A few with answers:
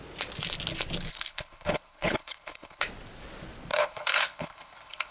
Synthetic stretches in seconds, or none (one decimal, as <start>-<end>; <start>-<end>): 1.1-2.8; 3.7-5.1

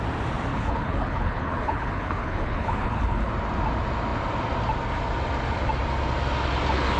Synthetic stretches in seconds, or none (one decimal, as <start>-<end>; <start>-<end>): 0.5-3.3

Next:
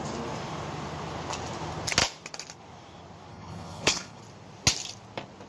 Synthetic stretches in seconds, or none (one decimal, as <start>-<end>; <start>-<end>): 3.3-4.2

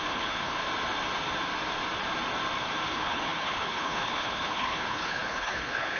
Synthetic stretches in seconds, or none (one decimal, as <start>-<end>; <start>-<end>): 0.0-0.6; 2.9-6.0

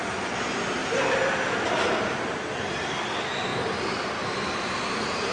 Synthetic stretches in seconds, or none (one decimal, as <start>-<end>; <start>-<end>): none